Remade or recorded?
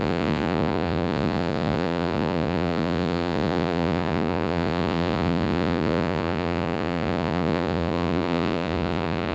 remade